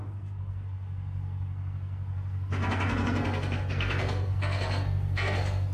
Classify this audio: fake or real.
fake